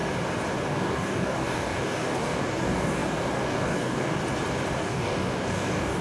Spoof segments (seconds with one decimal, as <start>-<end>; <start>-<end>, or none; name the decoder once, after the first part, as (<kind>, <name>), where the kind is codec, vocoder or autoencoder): 0.7-4.2 (codec, DAC); 4.8-6.0